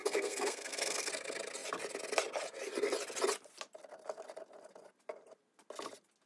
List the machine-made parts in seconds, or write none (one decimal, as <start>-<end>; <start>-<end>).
0.0-1.1